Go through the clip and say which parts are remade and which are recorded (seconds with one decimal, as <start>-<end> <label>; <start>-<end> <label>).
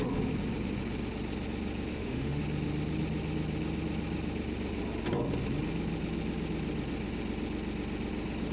0.0-1.9 recorded; 1.9-2.4 remade; 2.4-8.5 recorded